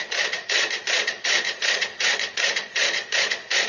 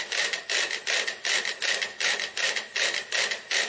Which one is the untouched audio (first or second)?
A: second